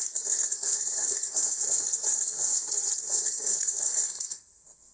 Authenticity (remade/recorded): remade